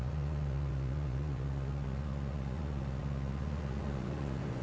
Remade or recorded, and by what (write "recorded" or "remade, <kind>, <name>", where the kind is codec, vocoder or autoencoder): remade, vocoder, Vocos